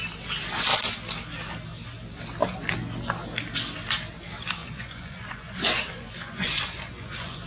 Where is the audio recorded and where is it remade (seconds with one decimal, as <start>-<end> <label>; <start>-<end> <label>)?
0.0-4.6 recorded; 4.6-7.5 remade